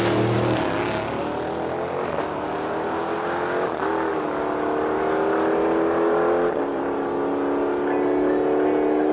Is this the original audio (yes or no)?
yes